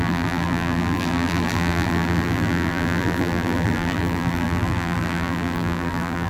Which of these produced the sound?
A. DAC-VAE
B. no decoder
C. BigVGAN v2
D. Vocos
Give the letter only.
C